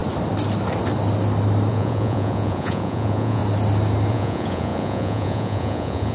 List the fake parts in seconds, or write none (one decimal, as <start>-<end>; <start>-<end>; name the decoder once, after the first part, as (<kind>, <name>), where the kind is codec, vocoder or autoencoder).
1.7-3.4 (vocoder, Vocos); 4.1-6.1